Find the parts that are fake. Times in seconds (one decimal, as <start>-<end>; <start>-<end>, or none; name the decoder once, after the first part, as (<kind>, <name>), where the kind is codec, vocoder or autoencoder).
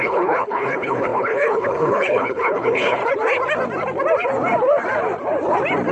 0.0-3.0 (codec, HILCodec)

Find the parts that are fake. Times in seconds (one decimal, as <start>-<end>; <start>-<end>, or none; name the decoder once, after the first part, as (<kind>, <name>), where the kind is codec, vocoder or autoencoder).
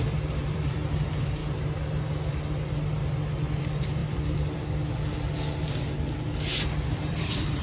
0.0-1.4 (vocoder, BigVGAN v2); 2.0-3.0; 3.6-7.6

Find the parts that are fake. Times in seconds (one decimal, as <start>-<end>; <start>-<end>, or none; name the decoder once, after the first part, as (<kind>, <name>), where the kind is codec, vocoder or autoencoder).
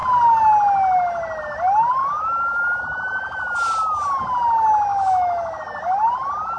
2.0-2.8 (autoencoder, DAC-VAE); 4.9-5.6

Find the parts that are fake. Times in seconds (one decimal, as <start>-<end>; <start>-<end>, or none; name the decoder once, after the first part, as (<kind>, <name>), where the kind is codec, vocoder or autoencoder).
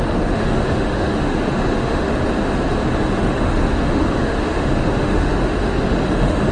0.0-2.1 (autoencoder, DAC-VAE); 3.2-6.5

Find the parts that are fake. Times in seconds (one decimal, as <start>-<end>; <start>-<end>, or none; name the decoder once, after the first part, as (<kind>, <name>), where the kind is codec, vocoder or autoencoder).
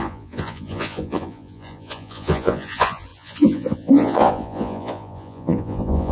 0.0-6.1 (vocoder, Vocos)